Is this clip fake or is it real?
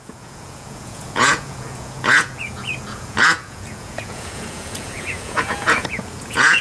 fake